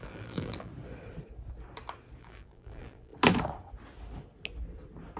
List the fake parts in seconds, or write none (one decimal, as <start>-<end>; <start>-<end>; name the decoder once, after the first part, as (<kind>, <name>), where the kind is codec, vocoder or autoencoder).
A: 0.0-0.7 (vocoder, BigVGAN v2); 2.2-3.1